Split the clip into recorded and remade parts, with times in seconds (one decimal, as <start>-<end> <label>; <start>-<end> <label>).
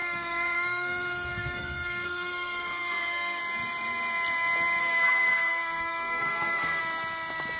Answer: 0.0-3.4 remade; 3.4-4.8 recorded; 4.8-6.8 remade; 6.8-7.6 recorded